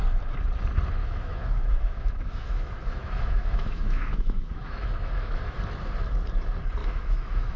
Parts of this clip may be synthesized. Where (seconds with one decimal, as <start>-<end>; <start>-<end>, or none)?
1.0-5.6; 6.8-7.6